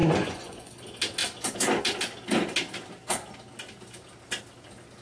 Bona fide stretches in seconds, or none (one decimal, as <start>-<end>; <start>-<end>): 0.7-5.0